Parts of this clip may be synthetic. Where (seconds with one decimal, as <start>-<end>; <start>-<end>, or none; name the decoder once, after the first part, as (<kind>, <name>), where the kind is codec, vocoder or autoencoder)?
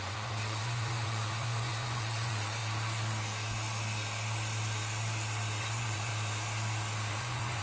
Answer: 0.0-2.6 (vocoder, Vocos); 5.6-6.1; 7.1-7.6